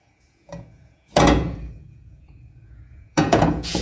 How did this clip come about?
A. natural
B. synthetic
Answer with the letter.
B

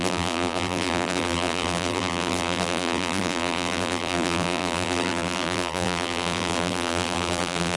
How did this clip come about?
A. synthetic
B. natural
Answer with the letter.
A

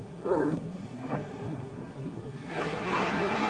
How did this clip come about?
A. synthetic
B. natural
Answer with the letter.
A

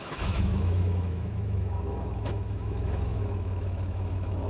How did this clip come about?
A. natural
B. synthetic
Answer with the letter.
B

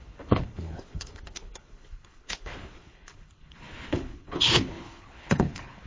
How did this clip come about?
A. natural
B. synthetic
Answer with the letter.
B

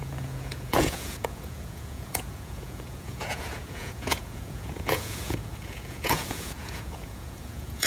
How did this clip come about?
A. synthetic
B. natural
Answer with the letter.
A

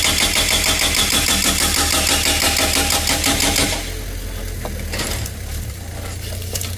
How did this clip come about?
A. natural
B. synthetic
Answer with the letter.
A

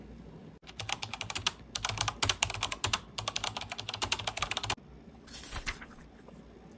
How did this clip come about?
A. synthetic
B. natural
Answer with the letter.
B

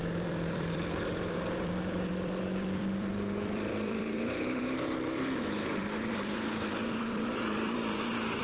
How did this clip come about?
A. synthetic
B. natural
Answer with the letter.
A